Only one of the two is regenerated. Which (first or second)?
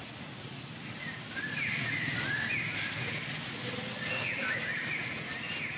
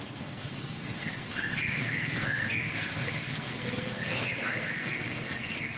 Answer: second